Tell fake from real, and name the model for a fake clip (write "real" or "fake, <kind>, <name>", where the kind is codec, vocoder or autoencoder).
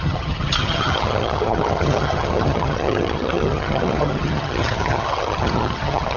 fake, vocoder, HiFi-GAN